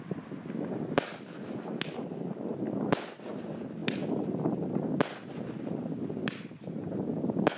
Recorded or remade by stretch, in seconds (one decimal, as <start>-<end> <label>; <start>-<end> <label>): 0.0-1.1 recorded; 1.1-1.6 remade; 1.6-7.6 recorded